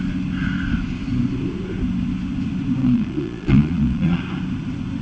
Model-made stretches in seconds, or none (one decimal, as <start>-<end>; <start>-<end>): 2.8-4.2